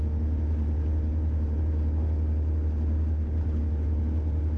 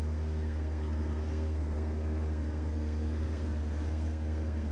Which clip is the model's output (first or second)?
second